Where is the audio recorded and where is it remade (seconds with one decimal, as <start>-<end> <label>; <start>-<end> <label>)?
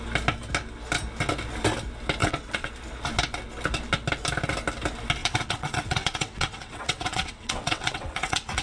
0.0-2.2 recorded; 2.2-2.7 remade; 2.7-5.2 recorded; 5.2-8.6 remade